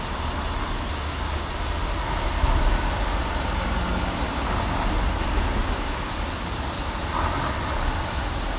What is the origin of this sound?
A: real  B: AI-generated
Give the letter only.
A